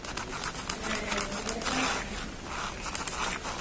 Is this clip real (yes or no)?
yes